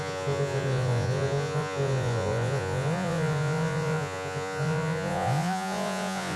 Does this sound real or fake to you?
fake